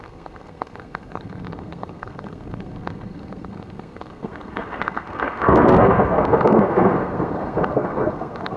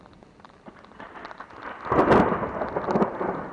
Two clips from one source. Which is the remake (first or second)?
first